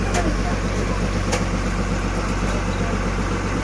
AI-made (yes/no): no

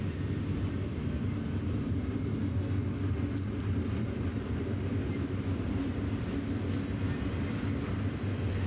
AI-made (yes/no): no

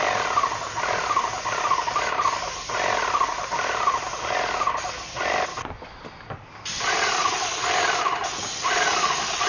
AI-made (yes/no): no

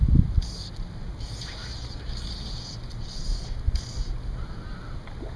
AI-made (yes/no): no